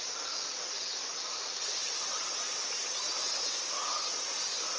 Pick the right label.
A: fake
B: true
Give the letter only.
B